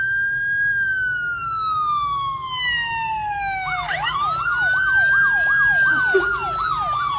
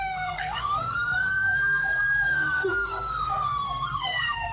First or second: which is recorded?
first